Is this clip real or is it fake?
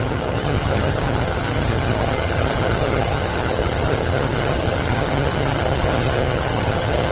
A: fake